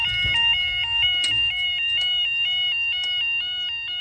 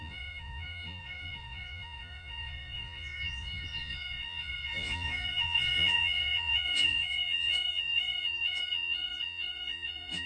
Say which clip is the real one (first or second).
first